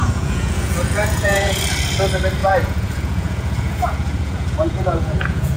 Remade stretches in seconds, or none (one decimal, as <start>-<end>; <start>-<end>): 0.0-1.6; 2.4-5.6